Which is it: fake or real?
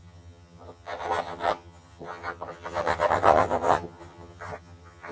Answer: fake